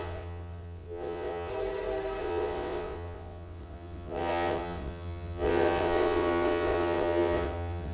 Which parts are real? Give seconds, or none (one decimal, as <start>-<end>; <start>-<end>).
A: 1.5-2.2